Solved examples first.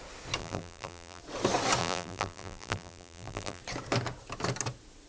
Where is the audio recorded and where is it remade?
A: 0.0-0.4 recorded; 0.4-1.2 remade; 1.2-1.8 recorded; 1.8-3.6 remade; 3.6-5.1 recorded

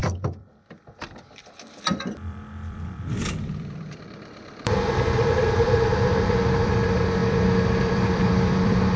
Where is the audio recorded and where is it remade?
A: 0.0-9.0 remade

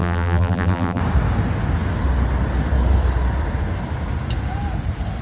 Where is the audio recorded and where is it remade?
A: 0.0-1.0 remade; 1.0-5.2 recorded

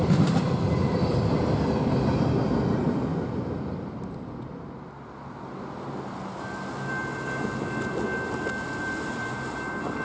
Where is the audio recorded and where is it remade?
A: 0.0-10.0 recorded

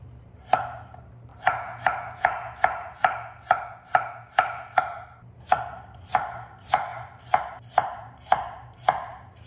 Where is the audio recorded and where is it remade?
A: 0.0-1.3 remade; 1.3-4.8 recorded; 4.8-9.5 remade